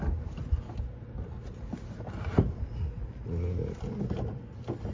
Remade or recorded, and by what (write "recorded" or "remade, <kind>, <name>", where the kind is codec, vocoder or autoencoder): recorded